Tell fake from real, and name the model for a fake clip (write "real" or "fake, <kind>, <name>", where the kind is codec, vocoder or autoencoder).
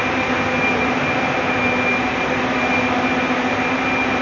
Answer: real